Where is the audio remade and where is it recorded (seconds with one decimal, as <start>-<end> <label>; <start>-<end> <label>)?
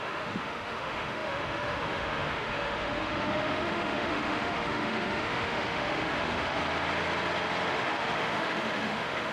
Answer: 0.0-6.6 remade; 6.6-7.7 recorded; 7.7-9.3 remade